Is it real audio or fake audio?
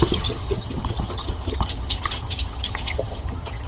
fake